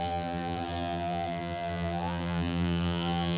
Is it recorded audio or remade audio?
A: remade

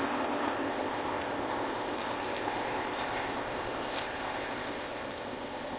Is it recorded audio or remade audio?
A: remade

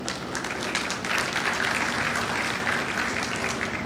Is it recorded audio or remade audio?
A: recorded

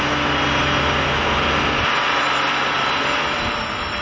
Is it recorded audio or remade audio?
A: recorded